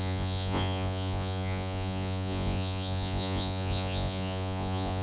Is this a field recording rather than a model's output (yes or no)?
no